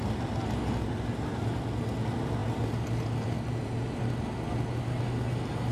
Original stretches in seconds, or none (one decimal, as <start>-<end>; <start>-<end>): 0.0-5.7